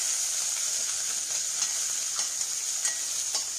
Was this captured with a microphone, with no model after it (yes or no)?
yes